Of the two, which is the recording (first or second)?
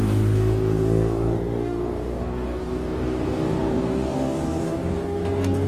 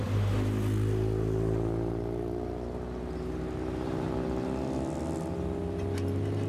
second